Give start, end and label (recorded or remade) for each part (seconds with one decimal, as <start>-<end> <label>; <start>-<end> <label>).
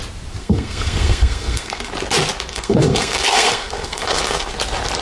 0.0-0.4 recorded; 0.4-1.9 remade; 1.9-2.5 recorded; 2.5-4.5 remade; 4.5-5.0 recorded